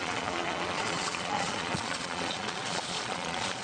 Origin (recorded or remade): remade